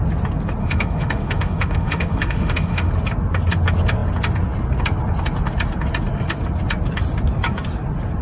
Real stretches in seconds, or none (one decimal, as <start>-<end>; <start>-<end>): 0.0-0.6; 2.9-8.2